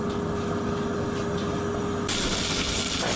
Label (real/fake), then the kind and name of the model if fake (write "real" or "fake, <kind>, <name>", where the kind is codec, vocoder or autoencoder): real